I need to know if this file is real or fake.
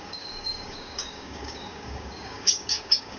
fake